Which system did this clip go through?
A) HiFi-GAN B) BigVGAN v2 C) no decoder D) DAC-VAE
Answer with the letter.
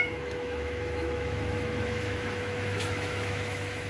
D